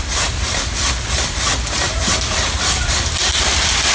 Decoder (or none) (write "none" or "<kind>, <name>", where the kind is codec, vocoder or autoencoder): vocoder, BigVGAN v2